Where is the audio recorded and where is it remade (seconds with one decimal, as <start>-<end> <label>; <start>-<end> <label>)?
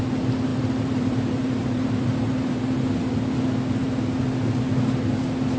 0.0-0.5 recorded; 0.5-2.6 remade; 2.6-3.8 recorded; 3.8-4.3 remade; 4.3-5.6 recorded